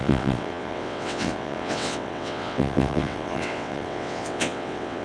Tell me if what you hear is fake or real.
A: fake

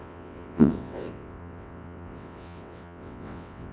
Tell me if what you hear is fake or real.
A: fake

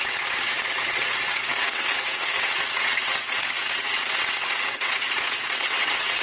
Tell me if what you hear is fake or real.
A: fake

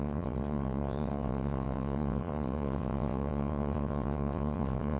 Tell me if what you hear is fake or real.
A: fake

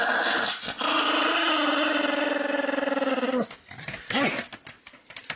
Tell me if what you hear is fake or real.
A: real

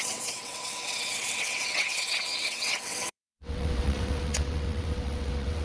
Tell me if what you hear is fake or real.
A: fake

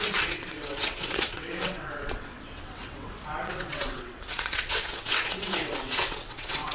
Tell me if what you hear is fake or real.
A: fake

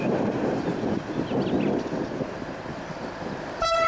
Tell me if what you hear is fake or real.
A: real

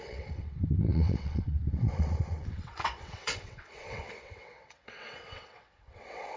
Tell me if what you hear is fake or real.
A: fake